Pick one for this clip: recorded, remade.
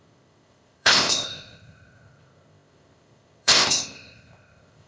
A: remade